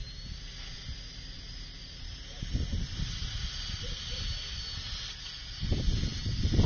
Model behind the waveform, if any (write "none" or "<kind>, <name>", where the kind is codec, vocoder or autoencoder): none